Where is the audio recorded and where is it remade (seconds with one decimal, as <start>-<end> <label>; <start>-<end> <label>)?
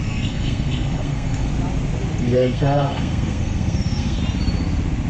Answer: 0.0-1.5 remade; 1.5-2.2 recorded; 2.2-4.2 remade; 4.2-5.1 recorded